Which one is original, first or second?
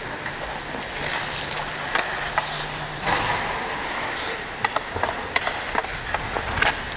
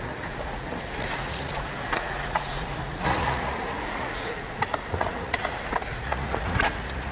first